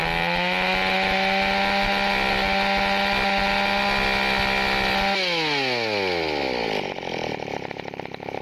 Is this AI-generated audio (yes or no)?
no